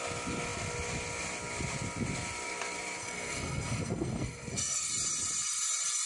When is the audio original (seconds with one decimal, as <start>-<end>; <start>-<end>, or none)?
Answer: 0.0-3.0; 4.9-6.1

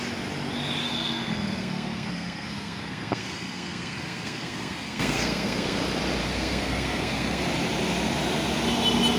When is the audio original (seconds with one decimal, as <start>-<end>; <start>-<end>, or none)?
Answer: 0.0-0.8; 5.8-6.2; 7.4-9.2

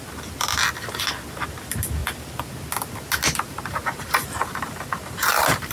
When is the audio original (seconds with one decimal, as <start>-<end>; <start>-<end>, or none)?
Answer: 0.0-5.7